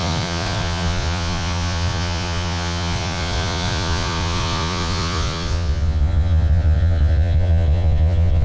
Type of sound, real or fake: fake